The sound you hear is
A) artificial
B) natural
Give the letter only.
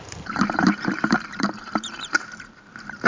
A